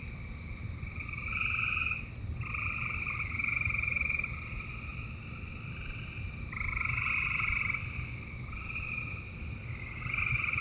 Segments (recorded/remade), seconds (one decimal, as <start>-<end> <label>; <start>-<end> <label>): 0.0-4.9 recorded; 4.9-6.0 remade; 6.0-10.6 recorded